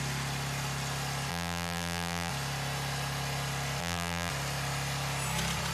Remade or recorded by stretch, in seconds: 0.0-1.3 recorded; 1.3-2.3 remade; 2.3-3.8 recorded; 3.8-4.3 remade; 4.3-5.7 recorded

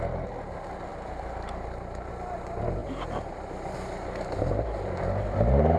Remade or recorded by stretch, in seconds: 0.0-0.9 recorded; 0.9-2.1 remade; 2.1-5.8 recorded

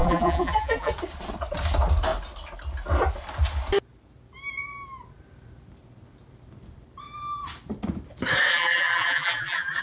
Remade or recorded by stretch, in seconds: 0.0-0.9 remade; 0.9-8.5 recorded; 8.5-9.8 remade

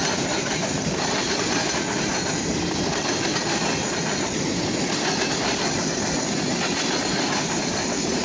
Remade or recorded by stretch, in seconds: 0.0-3.3 remade; 3.3-6.5 recorded; 6.5-8.2 remade

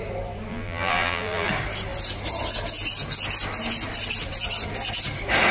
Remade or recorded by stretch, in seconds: 0.0-0.5 recorded; 0.5-1.5 remade; 1.5-5.5 recorded

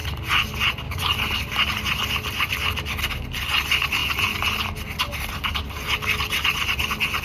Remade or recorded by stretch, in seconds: 0.0-7.2 recorded

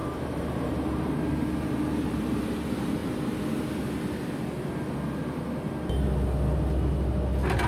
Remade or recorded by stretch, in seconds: 0.0-2.4 remade; 2.4-7.7 recorded